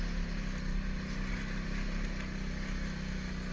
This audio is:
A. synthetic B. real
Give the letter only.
B